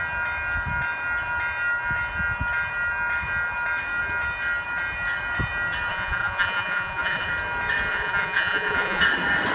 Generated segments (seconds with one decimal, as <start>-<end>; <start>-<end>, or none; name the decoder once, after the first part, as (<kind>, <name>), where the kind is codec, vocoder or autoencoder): 5.9-7.3 (vocoder, Vocos); 7.9-9.0

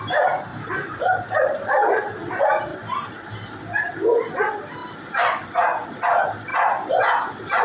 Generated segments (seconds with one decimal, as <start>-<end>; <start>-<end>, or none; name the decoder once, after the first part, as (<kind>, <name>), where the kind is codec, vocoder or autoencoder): 0.5-2.2 (vocoder, BigVGAN v2); 2.7-3.3

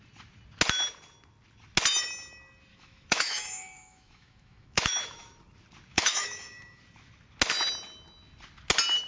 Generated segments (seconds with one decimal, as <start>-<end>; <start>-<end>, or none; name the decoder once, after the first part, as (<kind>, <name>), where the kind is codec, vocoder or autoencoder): 2.7-5.4 (autoencoder, DAC-VAE); 5.9-6.8

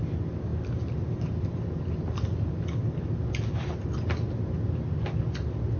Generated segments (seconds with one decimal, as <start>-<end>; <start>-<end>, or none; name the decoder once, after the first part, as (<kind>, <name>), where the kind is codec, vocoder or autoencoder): none

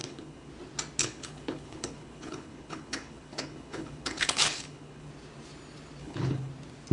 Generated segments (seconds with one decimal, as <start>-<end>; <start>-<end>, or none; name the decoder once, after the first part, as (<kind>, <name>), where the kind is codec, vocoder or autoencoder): 0.0-0.5 (codec, HILCodec); 1.0-5.1; 6.0-6.5